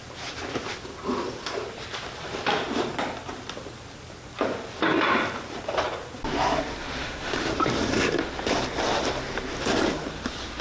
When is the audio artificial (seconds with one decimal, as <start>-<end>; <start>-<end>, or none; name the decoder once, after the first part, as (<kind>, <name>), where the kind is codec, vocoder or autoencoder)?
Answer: 7.0-7.5 (autoencoder, DAC-VAE)